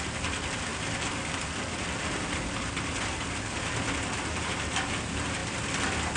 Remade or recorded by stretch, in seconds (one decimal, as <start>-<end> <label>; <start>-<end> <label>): 0.0-6.2 recorded